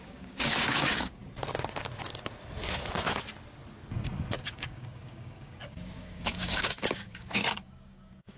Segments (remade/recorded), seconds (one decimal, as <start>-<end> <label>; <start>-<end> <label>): 0.0-1.2 remade; 1.2-4.3 recorded; 4.3-8.4 remade